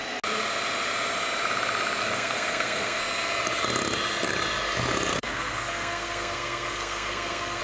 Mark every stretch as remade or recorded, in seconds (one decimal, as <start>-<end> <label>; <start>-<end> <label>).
0.0-2.0 recorded; 2.0-3.0 remade; 3.0-5.1 recorded; 5.1-7.6 remade